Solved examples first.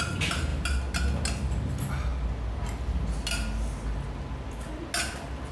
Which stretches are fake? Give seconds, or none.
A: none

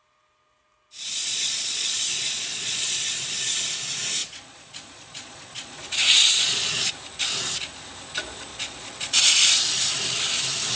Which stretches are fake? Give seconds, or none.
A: 1.2-3.1; 4.2-6.9; 8.5-9.8